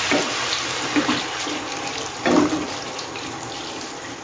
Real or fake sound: real